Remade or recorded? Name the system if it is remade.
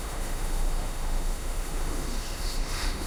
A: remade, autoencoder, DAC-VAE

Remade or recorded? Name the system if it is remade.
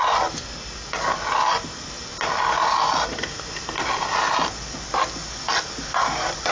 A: recorded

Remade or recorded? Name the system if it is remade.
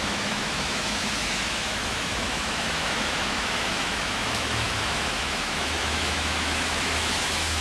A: remade, autoencoder, DAC-VAE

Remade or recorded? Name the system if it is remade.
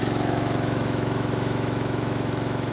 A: remade, autoencoder, DAC-VAE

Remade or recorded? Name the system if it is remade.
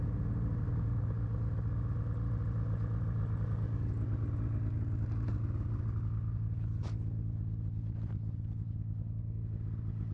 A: recorded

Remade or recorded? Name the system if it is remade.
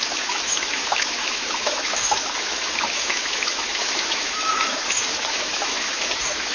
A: remade, autoencoder, DAC-VAE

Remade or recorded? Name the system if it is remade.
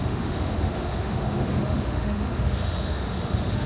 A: remade, autoencoder, DAC-VAE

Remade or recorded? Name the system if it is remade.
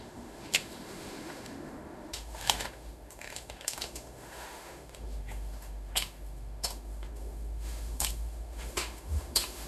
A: remade, autoencoder, DAC-VAE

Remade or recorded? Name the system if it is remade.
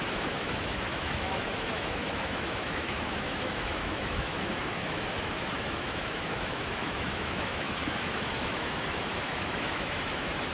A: remade, autoencoder, DAC-VAE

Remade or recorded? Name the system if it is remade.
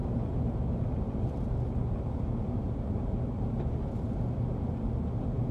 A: recorded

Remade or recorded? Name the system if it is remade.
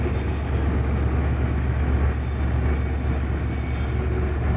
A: recorded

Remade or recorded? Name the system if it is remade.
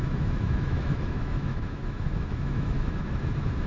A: remade, autoencoder, DAC-VAE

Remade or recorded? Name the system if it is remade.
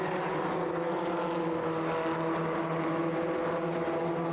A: recorded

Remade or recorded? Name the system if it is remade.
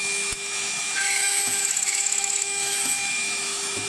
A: remade, autoencoder, DAC-VAE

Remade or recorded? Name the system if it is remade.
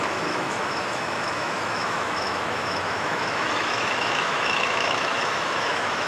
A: remade, autoencoder, DAC-VAE